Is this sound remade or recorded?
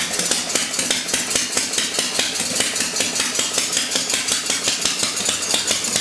recorded